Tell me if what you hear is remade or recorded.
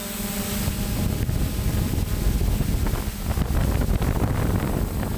recorded